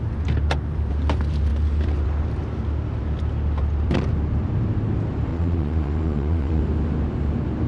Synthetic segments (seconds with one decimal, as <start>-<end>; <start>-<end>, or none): 5.3-6.6